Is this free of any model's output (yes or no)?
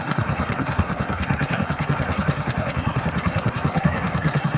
no